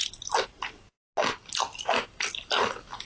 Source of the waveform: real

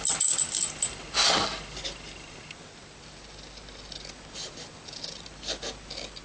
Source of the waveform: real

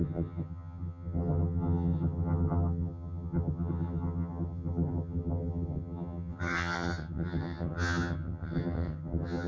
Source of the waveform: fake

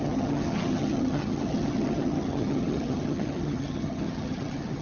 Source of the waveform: fake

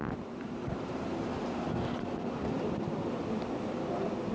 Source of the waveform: real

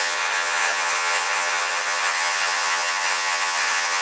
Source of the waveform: fake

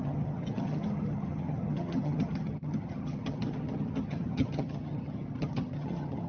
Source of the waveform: fake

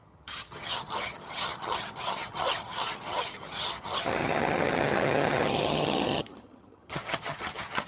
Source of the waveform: fake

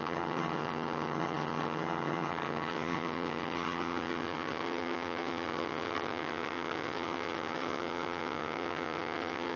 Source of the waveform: fake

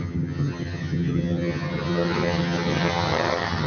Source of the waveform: fake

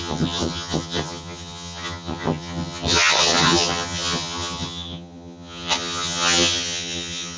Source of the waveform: fake